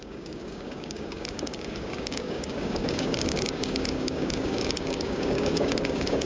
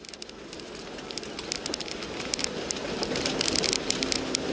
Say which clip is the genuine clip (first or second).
second